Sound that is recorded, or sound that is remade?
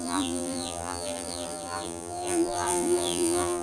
remade